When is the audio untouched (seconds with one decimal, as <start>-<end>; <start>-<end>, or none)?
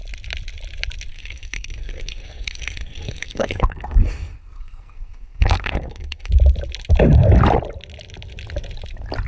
0.0-1.1; 6.3-9.3